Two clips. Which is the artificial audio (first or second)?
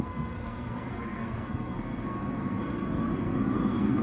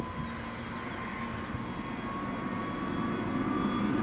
first